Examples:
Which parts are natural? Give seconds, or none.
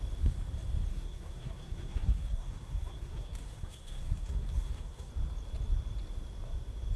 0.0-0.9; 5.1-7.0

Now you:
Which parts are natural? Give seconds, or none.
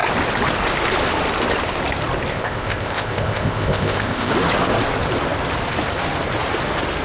0.0-2.3; 4.3-7.0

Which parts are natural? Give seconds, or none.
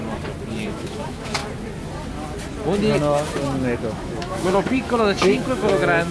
0.0-0.6; 1.4-3.8